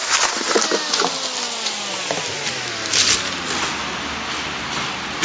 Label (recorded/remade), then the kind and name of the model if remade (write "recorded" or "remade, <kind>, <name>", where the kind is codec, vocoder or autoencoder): recorded